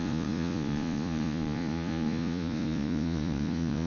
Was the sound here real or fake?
fake